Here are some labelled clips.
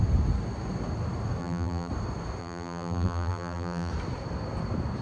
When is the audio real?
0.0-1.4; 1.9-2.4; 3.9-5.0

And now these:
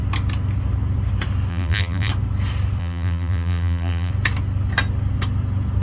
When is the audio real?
0.0-1.5; 2.1-2.8; 4.1-5.8

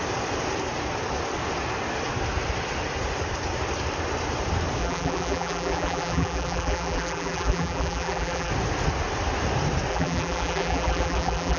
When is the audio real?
0.0-4.8; 8.5-9.9